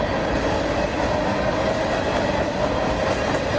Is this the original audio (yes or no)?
yes